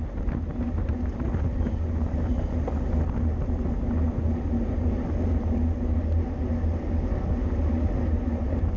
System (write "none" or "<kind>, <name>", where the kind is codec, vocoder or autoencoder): none